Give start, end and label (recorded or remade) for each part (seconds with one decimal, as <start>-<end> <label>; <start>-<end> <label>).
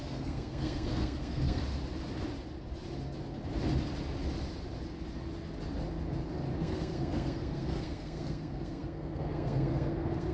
0.0-1.6 remade; 1.6-6.6 recorded; 6.6-10.3 remade